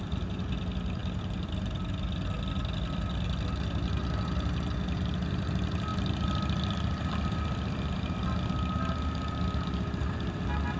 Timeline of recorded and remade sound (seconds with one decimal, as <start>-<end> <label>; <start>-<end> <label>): 0.0-10.8 recorded